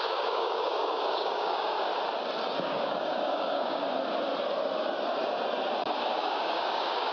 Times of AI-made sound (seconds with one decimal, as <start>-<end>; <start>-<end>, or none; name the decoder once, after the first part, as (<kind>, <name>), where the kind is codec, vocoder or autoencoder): 0.0-1.9 (codec, DAC); 2.6-3.8; 6.0-7.1